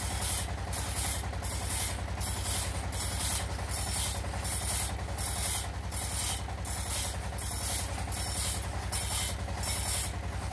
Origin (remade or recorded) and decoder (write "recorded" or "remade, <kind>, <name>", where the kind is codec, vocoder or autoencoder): recorded